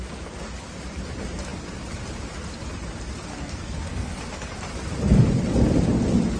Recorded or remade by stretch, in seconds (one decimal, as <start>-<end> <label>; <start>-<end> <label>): 0.0-3.3 recorded; 3.3-4.2 remade; 4.2-6.4 recorded